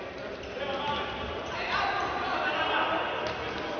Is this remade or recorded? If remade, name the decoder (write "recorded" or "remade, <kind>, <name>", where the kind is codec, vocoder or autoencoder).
recorded